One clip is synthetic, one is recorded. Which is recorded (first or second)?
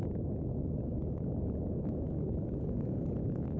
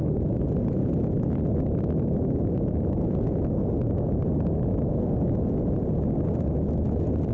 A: second